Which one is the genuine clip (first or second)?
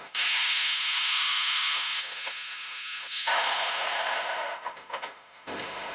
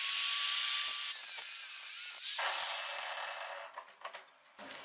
second